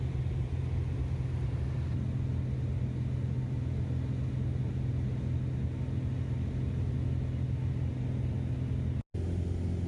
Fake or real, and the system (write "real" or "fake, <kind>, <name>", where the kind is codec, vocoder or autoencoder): real